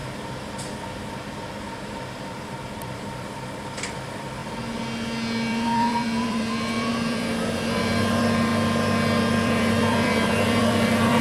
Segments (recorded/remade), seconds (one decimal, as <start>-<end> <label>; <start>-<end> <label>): 0.0-2.3 recorded; 2.3-4.4 remade; 4.4-5.5 recorded; 5.5-8.5 remade; 8.5-9.3 recorded; 9.3-11.2 remade